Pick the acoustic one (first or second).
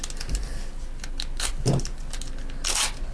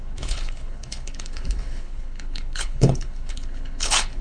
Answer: first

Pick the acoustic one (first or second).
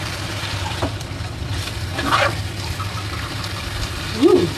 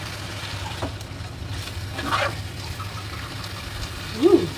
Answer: second